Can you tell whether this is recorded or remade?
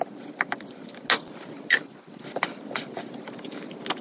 recorded